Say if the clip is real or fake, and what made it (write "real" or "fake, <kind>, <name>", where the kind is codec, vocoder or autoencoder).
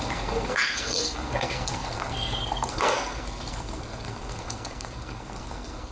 fake, codec, SNAC